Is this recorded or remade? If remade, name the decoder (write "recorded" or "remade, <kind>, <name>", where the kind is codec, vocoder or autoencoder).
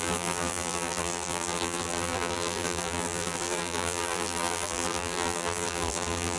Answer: remade, vocoder, BigVGAN v2